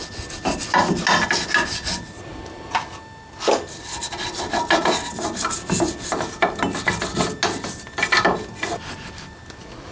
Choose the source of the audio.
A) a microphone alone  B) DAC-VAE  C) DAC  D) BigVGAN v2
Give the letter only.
A